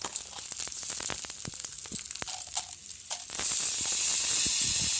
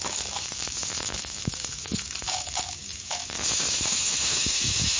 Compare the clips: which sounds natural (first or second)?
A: first